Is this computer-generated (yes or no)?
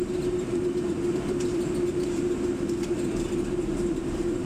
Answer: yes